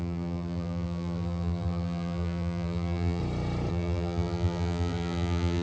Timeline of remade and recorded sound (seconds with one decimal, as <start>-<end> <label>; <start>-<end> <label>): 0.0-3.2 remade; 3.2-3.7 recorded; 3.7-5.6 remade